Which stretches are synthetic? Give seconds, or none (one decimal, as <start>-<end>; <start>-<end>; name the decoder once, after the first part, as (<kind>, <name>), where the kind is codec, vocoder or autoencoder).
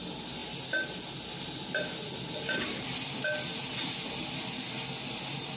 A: none